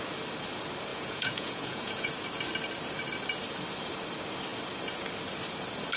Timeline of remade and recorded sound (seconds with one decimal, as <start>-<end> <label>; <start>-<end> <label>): 0.0-0.9 recorded; 0.9-2.1 remade; 2.1-6.0 recorded